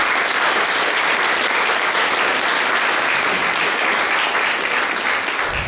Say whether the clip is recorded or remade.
recorded